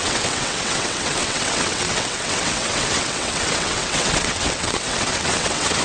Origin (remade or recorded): remade